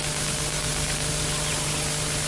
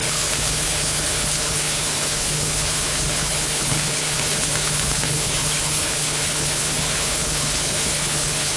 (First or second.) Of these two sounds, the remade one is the second